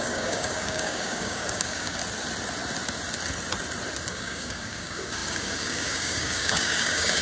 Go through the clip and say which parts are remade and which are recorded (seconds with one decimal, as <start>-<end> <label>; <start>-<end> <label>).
0.0-2.0 remade; 2.0-4.1 recorded; 4.1-7.2 remade